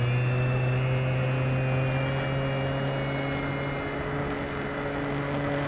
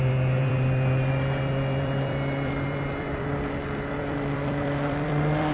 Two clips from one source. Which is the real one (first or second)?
first